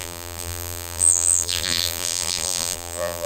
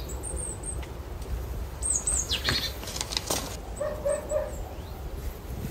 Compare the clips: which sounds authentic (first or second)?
second